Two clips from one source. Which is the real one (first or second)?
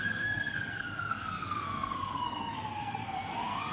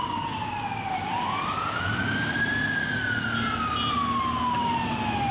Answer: second